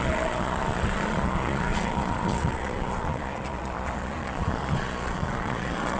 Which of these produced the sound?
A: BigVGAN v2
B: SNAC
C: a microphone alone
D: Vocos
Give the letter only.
D